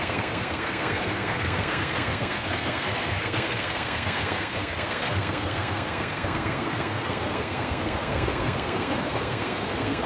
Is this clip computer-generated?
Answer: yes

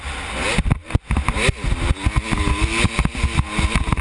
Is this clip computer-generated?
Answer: no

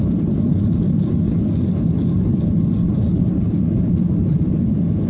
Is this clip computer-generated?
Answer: no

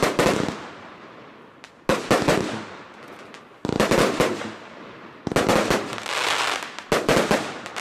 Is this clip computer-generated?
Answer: no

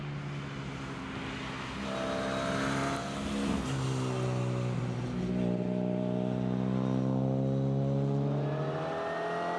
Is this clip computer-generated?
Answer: no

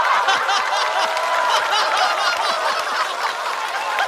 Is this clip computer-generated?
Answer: no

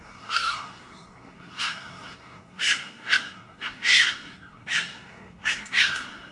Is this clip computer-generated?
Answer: yes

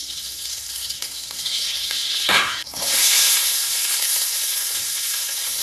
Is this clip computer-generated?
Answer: yes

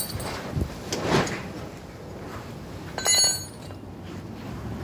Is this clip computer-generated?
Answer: no